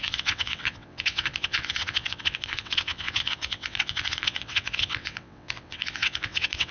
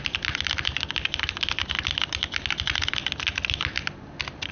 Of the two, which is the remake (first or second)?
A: first